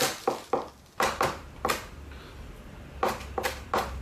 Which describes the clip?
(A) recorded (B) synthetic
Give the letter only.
B